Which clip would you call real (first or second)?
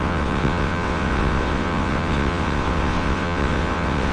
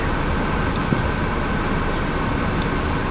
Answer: second